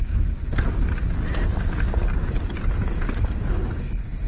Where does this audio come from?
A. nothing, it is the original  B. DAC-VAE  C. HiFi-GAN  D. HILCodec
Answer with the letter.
A